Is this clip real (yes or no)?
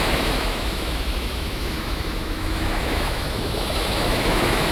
no